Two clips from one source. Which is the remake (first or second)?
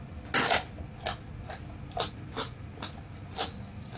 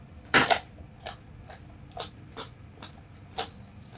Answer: second